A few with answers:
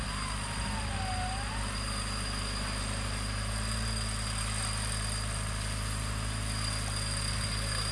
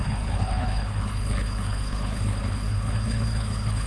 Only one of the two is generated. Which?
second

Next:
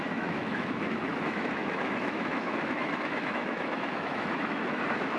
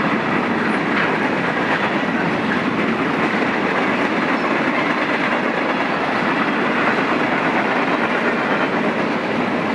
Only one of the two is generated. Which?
first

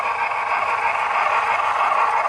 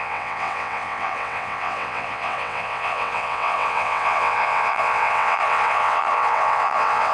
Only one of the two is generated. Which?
second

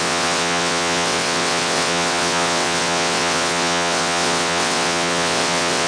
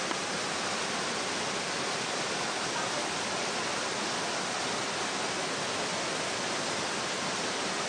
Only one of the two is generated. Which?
first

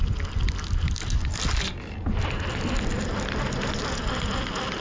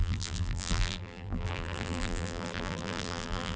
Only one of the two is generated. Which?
second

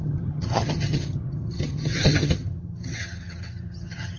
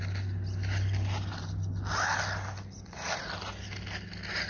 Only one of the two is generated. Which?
first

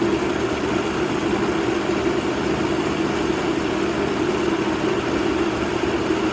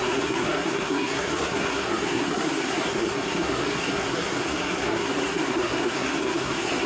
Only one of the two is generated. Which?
second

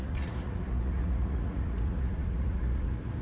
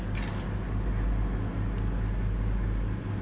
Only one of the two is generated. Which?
first